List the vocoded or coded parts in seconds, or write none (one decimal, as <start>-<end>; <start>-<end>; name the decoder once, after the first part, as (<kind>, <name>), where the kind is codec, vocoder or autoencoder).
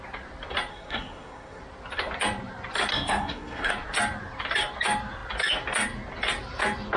0.7-1.6 (codec, SNAC); 2.9-3.7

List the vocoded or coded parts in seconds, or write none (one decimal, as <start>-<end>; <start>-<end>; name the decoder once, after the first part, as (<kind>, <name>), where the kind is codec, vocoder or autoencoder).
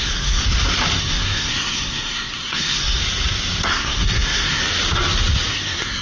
0.0-0.4 (codec, SNAC); 1.0-3.0; 3.6-4.6; 5.5-6.0